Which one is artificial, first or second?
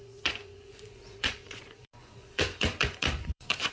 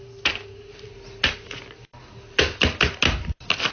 first